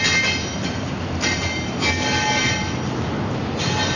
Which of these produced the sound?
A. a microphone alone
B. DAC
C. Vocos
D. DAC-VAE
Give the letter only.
A